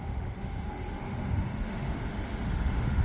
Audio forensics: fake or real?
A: fake